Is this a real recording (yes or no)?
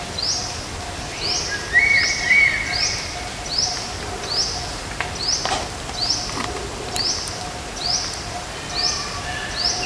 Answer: no